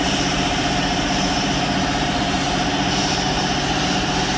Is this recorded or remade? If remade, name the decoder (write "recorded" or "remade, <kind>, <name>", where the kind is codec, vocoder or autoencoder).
remade, vocoder, BigVGAN v2